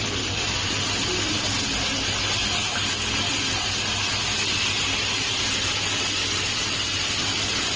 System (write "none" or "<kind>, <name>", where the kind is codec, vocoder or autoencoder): none